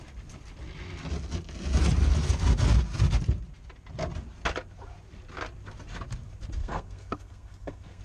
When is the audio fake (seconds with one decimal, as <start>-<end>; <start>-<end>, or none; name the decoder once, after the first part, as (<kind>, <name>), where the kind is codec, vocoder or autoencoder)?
6.6-8.0 (codec, SNAC)